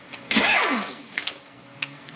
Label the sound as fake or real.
fake